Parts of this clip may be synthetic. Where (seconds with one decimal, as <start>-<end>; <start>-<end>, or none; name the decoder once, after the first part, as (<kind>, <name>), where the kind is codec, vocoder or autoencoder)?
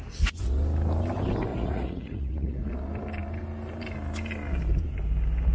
1.5-2.7 (vocoder, Vocos)